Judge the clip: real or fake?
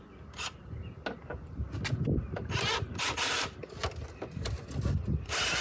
real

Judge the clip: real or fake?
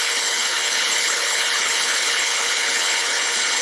fake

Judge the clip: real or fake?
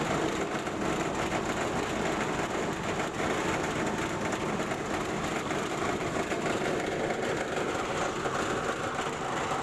real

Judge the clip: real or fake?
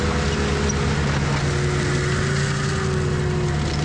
real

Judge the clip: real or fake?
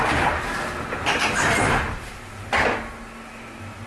real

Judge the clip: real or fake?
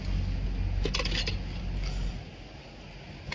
real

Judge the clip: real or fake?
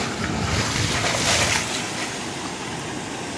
real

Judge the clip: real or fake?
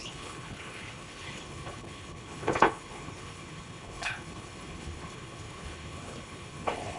fake